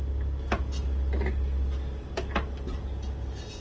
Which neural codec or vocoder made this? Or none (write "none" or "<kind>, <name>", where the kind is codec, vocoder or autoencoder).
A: none